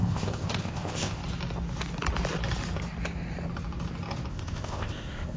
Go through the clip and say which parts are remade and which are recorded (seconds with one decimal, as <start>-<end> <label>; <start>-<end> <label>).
0.0-1.2 remade; 1.2-4.3 recorded; 4.3-5.4 remade